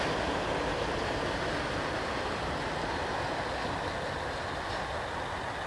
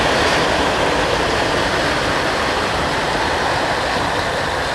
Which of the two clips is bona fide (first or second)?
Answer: first